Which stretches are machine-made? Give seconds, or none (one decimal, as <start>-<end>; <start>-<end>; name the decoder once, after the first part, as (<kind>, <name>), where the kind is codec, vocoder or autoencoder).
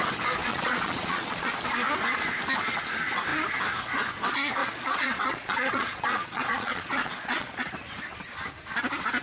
0.4-1.5 (vocoder, Vocos); 4.6-7.7